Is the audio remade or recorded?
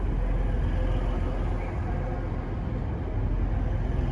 recorded